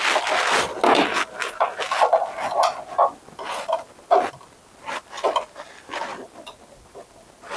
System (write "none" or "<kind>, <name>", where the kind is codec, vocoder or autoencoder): none